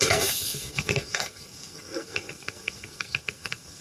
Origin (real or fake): fake